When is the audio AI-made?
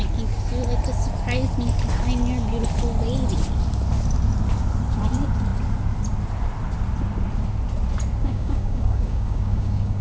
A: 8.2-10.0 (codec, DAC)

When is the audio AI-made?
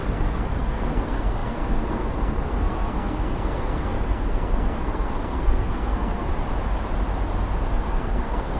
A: 0.0-6.3 (codec, SNAC); 7.7-8.6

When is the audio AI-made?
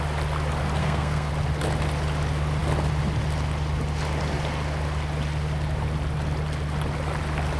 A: 0.8-1.3 (codec, SNAC)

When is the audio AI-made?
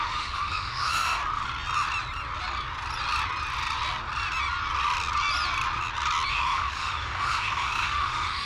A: 0.0-1.2 (autoencoder, DAC-VAE); 6.3-8.5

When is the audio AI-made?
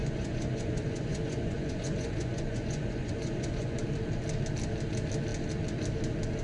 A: 0.0-3.8 (vocoder, Vocos)